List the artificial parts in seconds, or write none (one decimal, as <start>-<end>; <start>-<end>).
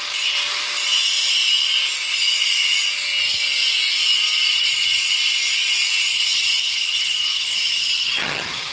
4.5-5.0; 6.1-8.7